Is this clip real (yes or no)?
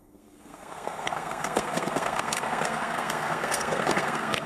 no